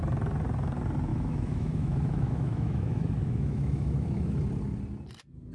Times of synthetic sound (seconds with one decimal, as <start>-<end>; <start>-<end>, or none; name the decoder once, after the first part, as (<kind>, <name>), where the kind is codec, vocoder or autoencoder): 1.1-4.4 (autoencoder, DAC-VAE)